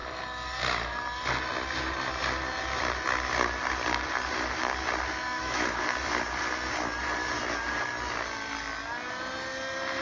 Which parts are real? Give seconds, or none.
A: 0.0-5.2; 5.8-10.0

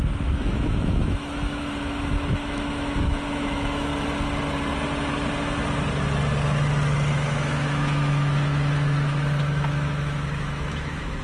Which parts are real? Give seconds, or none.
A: 3.9-7.1

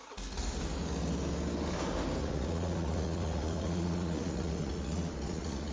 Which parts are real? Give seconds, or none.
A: 0.0-2.2

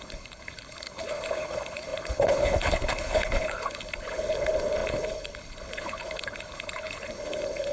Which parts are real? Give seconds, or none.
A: none